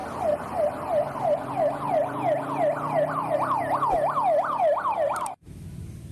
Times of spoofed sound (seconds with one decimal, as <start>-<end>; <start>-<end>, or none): none